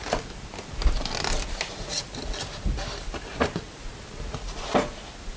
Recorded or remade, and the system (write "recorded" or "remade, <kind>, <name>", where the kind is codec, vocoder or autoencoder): recorded